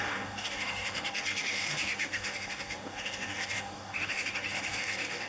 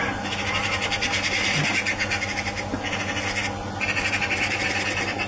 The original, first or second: second